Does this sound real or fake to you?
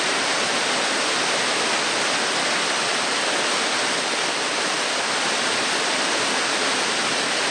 real